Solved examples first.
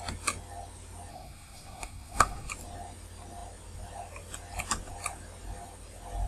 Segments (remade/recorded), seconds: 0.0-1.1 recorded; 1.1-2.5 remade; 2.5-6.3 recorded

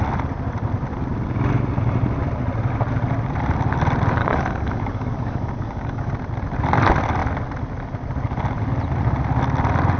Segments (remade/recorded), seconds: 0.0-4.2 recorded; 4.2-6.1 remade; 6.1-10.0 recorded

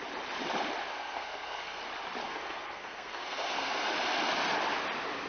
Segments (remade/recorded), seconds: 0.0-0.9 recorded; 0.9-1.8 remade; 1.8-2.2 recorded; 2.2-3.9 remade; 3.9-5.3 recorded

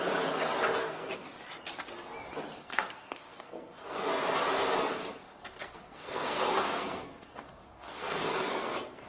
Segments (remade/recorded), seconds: 0.0-0.8 recorded; 0.8-1.3 remade; 1.3-2.6 recorded; 2.6-4.1 remade; 4.1-5.0 recorded; 5.0-9.1 remade

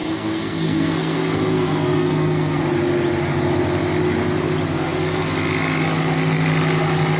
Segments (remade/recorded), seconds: 0.0-2.6 remade; 2.6-7.2 recorded

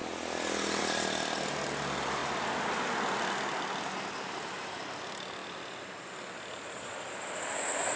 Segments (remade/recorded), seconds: 0.0-8.0 recorded